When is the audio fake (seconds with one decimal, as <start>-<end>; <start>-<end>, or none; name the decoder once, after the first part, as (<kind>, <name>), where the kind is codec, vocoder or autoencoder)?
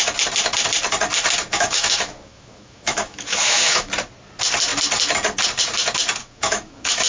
1.5-3.9 (autoencoder, DAC-VAE); 6.2-7.1